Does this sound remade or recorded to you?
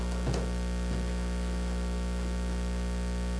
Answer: recorded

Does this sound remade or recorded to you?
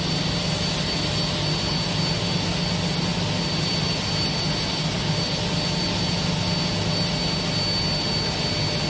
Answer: recorded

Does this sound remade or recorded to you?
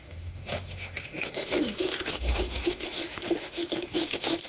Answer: remade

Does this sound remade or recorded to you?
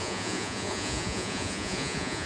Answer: remade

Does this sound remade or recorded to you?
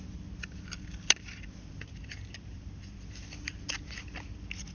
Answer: recorded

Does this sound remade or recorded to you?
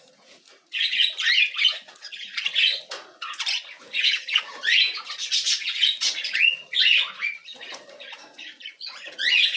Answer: remade